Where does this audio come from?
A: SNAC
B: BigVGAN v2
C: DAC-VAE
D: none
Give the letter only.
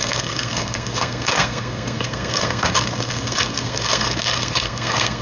A